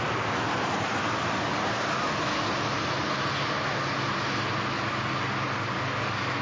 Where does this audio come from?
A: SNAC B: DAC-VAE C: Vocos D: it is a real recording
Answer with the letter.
D